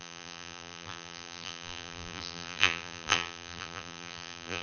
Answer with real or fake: fake